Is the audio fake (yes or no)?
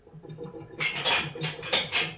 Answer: no